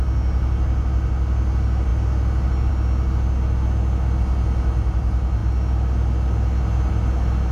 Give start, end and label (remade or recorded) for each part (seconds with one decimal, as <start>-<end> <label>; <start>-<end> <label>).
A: 0.0-7.5 recorded